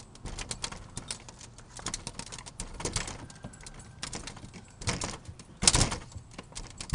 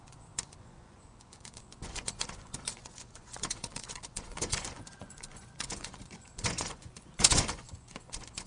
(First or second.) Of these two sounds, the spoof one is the second